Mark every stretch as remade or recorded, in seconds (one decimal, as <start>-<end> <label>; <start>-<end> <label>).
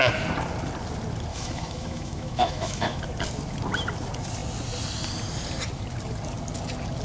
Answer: 0.0-1.3 recorded; 1.3-3.0 remade; 3.0-7.0 recorded